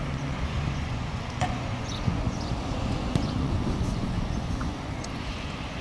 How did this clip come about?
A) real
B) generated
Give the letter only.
B